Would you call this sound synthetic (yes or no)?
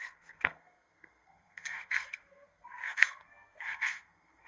yes